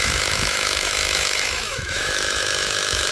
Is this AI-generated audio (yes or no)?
yes